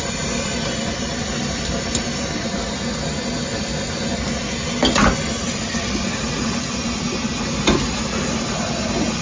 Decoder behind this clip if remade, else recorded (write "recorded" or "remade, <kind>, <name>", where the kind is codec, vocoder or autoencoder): recorded